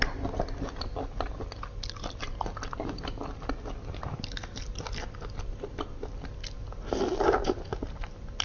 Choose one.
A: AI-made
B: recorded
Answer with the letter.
B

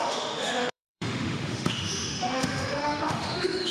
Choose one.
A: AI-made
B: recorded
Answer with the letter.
A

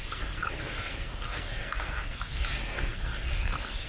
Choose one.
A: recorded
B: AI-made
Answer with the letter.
B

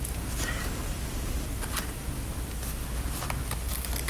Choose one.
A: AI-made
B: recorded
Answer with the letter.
B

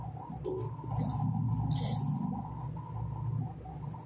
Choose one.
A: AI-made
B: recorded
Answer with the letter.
B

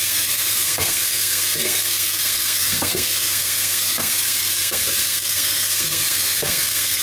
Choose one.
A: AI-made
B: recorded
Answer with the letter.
A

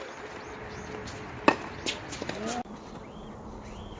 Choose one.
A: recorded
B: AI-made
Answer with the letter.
A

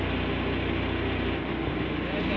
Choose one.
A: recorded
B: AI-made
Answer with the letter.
A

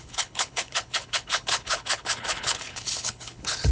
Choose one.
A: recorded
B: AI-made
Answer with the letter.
B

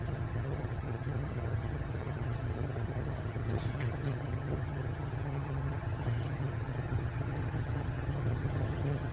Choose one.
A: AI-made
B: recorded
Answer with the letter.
A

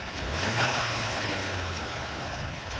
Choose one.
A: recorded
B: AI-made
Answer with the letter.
B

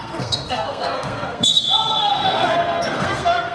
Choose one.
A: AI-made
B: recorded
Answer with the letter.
A